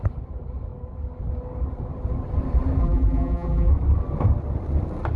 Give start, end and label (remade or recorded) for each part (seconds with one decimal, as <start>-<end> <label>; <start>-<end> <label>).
0.0-2.8 recorded; 2.8-3.7 remade; 3.7-5.2 recorded